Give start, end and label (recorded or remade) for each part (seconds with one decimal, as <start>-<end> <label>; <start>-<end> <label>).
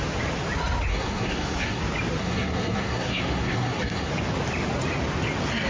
0.0-0.9 recorded; 0.9-1.8 remade; 1.8-2.2 recorded; 2.2-4.1 remade; 4.1-5.7 recorded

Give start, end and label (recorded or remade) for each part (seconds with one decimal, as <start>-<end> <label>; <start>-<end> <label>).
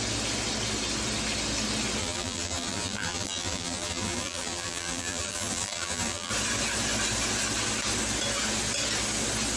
0.0-2.0 recorded; 2.0-6.3 remade; 6.3-9.6 recorded